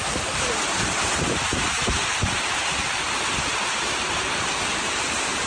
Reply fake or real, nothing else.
fake